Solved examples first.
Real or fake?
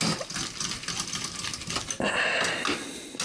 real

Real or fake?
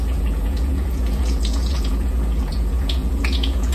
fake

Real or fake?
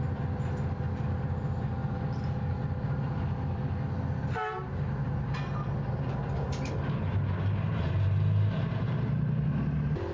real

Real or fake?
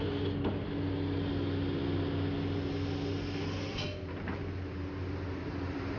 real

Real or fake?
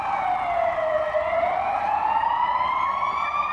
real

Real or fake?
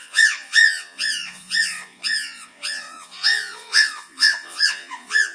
fake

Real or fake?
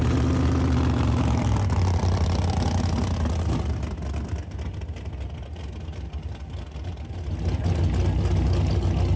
real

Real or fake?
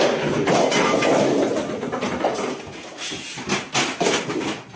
real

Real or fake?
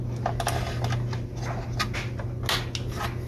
real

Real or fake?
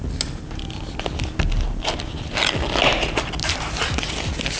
real